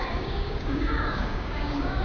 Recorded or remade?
remade